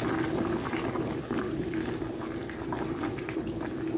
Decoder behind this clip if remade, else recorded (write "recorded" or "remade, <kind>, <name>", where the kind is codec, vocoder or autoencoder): recorded